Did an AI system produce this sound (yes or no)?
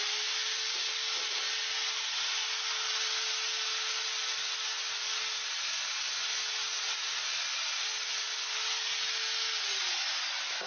no